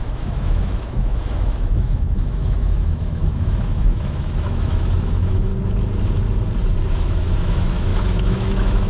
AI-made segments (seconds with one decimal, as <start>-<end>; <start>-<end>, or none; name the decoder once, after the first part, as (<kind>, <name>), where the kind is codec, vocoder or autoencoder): 0.0-5.5 (autoencoder, DAC-VAE); 6.9-8.9